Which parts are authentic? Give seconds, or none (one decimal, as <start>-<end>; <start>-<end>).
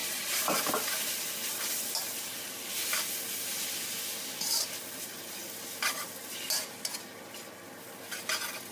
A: 0.0-8.7